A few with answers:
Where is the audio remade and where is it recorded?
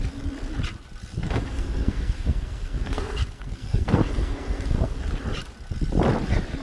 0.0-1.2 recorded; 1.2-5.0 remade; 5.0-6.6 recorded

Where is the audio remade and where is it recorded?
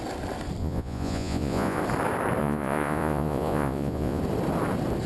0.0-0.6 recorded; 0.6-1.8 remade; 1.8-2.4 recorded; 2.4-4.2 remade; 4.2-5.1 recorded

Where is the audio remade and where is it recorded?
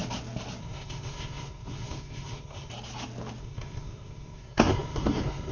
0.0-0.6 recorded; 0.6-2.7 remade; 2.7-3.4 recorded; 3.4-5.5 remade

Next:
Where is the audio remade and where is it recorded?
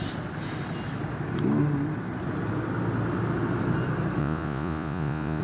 0.0-4.2 recorded; 4.2-5.4 remade